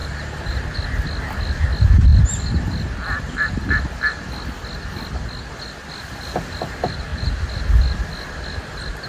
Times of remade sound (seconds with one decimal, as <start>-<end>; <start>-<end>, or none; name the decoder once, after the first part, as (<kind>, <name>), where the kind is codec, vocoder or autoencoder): 0.0-0.6 (vocoder, BigVGAN v2)